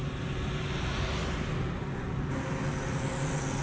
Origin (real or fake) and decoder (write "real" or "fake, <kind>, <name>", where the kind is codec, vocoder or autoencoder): real